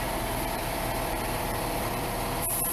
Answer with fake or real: fake